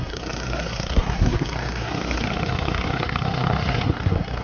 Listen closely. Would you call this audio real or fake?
fake